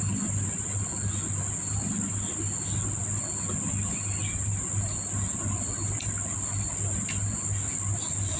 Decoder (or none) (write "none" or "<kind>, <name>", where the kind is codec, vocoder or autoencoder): none